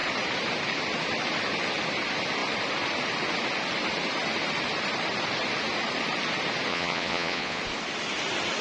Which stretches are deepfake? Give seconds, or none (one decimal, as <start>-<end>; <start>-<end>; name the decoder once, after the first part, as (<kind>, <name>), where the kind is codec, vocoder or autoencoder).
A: 6.7-7.6 (vocoder, Vocos)